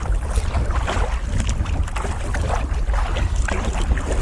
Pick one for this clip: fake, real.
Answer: real